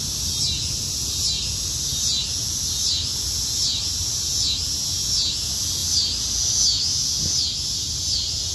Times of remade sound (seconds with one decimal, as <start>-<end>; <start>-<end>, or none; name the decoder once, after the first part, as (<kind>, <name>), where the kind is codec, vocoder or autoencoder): none